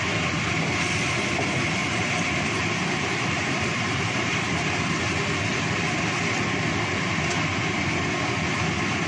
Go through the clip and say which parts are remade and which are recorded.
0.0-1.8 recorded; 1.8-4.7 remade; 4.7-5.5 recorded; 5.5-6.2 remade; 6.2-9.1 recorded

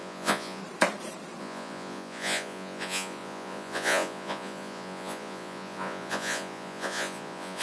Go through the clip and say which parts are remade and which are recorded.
0.0-0.6 remade; 0.6-1.4 recorded; 1.4-7.6 remade

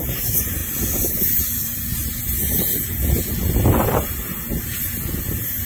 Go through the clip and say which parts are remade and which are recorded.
0.0-0.6 remade; 0.6-1.4 recorded; 1.4-1.9 remade; 1.9-5.3 recorded; 5.3-5.7 remade

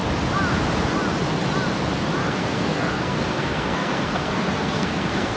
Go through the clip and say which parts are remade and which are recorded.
0.0-2.2 recorded; 2.2-5.4 remade